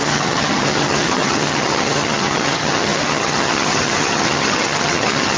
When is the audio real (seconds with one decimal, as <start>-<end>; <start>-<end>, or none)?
none